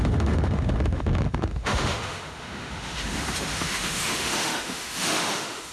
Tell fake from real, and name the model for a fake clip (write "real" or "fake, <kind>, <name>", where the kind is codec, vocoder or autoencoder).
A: fake, autoencoder, DAC-VAE